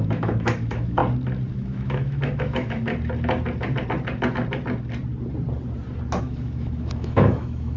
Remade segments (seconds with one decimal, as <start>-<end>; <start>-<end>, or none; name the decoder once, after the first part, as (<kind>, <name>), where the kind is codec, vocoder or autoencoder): 0.0-1.0 (autoencoder, DAC-VAE); 1.5-2.9; 6.2-7.8